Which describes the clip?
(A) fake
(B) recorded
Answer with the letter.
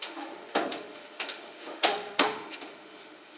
A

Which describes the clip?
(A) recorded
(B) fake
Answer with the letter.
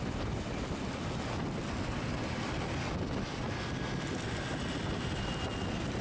A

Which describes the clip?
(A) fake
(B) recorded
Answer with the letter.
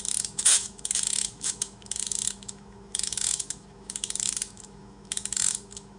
A